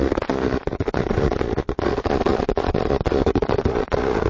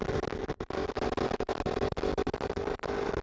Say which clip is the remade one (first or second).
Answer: first